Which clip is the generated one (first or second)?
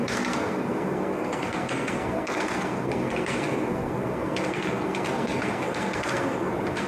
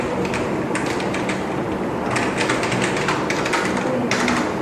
first